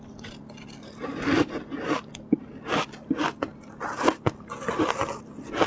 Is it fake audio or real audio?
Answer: real